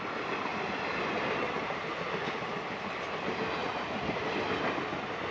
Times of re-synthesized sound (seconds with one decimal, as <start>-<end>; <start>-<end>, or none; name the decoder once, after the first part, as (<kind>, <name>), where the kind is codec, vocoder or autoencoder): 3.6-4.3 (vocoder, BigVGAN v2)